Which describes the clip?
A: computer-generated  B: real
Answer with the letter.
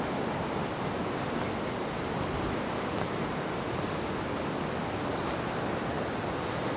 B